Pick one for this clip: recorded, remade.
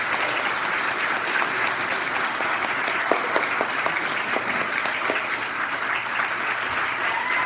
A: recorded